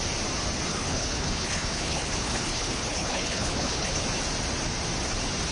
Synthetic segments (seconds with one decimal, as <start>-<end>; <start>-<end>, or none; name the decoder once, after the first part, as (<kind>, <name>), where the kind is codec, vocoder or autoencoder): 0.7-4.0 (codec, HILCodec)